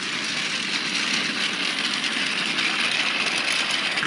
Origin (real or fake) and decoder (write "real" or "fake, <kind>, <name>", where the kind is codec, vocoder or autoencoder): real